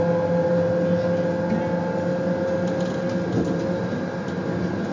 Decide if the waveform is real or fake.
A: real